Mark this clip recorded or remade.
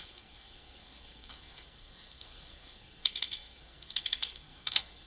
remade